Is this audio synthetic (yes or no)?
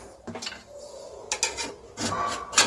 no